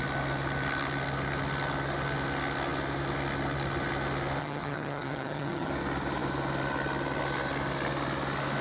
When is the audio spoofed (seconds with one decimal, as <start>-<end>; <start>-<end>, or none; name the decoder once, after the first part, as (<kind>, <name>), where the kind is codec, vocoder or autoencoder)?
4.4-5.7 (vocoder, HiFi-GAN)